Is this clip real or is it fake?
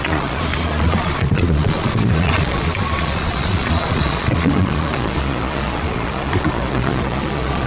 fake